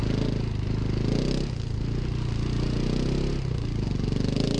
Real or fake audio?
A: real